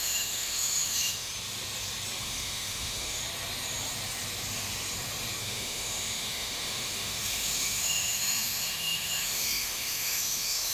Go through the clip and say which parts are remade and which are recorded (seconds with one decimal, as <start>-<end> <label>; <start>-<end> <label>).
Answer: 0.0-1.3 remade; 1.3-2.2 recorded; 2.2-3.2 remade; 3.2-5.4 recorded; 5.4-10.7 remade